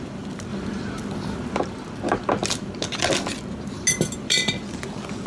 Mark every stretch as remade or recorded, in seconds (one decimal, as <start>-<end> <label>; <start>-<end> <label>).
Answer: 0.0-5.3 recorded